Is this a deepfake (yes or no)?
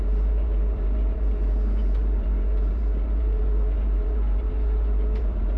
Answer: yes